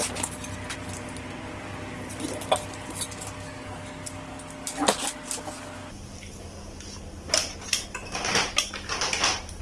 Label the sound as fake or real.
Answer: real